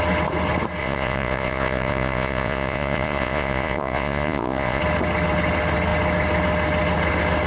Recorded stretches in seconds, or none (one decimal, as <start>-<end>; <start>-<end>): 0.0-0.8; 4.8-7.5